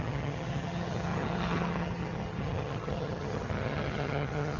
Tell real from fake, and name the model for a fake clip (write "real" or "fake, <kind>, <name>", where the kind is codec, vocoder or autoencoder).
fake, vocoder, HiFi-GAN